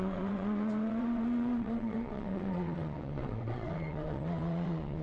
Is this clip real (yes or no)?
no